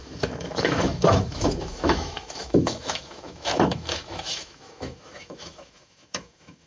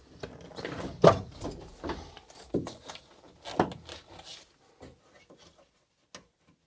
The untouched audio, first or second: second